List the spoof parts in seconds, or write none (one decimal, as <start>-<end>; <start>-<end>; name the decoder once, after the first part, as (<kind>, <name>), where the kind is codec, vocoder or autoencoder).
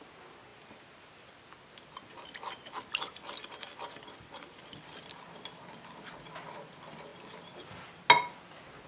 none